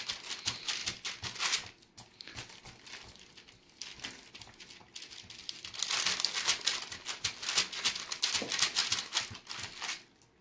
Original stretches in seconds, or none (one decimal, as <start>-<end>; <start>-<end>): 0.0-10.4